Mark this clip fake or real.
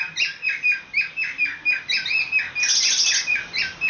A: real